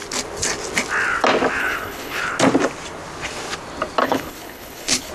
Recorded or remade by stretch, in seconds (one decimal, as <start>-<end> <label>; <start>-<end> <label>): 0.0-1.6 recorded; 1.6-2.2 remade; 2.2-4.0 recorded; 4.0-5.1 remade